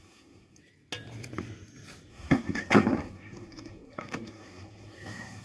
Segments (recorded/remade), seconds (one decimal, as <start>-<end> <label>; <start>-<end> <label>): 0.0-0.6 remade; 0.6-2.1 recorded; 2.1-5.4 remade